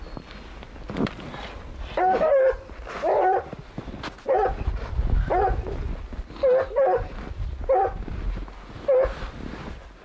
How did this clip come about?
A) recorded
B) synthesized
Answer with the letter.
A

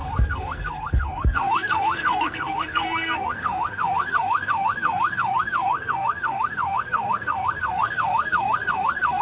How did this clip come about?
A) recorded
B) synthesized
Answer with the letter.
B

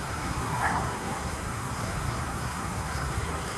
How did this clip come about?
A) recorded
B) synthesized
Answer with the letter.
B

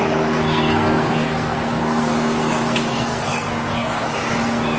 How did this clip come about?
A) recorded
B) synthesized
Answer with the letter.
B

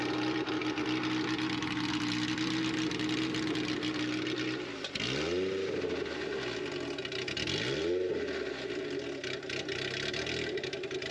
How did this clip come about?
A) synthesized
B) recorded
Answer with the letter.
B